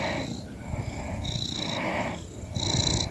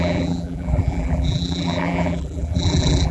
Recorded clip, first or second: first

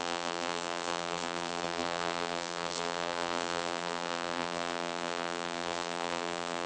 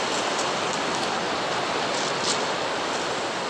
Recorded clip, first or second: second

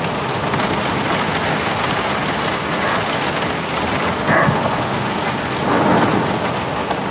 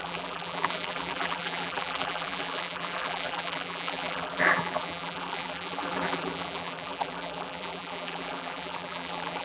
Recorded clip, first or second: first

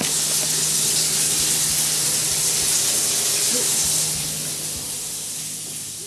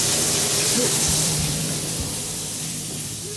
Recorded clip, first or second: first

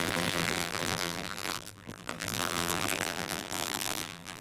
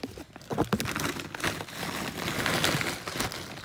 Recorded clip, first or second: second